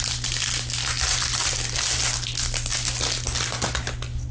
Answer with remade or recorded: recorded